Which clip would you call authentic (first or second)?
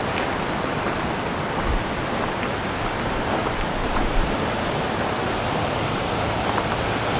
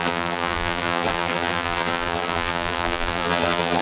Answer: first